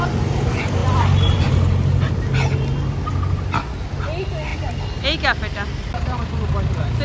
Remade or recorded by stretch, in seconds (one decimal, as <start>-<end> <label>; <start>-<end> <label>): 0.0-7.0 recorded